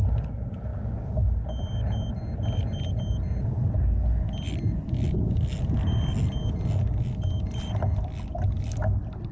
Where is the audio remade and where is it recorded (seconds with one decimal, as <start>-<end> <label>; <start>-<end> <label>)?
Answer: 0.0-9.3 recorded

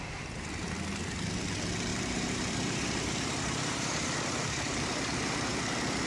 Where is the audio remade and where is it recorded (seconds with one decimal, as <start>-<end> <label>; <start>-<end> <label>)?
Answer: 0.0-1.9 recorded; 1.9-5.6 remade; 5.6-6.1 recorded

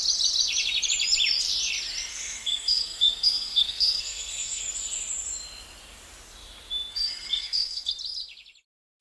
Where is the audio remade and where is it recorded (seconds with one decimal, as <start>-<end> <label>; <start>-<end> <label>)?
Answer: 0.0-2.1 recorded; 2.1-4.6 remade; 4.6-6.9 recorded; 6.9-7.9 remade; 7.9-9.0 recorded